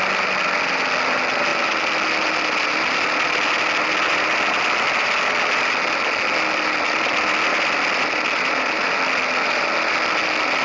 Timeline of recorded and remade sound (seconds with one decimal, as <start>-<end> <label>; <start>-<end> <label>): 0.0-10.6 recorded

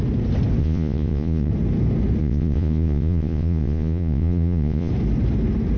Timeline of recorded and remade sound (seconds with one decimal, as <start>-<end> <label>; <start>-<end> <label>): 0.0-0.6 recorded; 0.6-1.5 remade; 1.5-2.2 recorded; 2.2-4.9 remade; 4.9-5.8 recorded